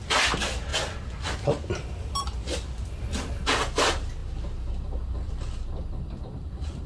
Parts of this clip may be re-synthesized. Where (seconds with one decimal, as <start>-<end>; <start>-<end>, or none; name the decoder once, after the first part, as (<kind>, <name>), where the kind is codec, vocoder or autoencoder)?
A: none